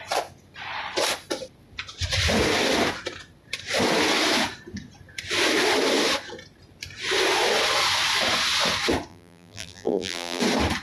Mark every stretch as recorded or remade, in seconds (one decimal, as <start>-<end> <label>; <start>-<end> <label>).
0.0-9.1 recorded; 9.1-10.4 remade; 10.4-10.8 recorded